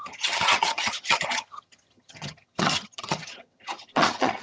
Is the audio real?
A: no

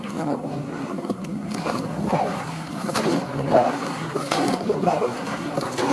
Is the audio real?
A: no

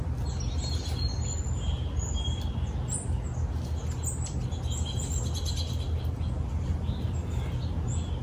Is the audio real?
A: yes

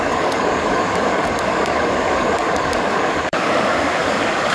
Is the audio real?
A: no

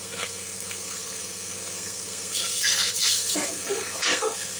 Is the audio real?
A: no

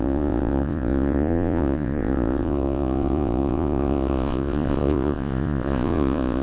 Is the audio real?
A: no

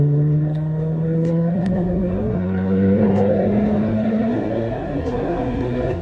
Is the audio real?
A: no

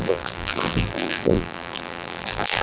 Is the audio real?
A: no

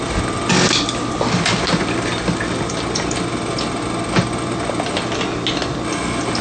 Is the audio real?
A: yes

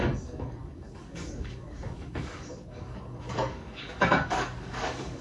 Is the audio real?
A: no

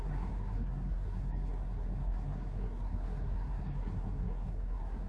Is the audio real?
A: no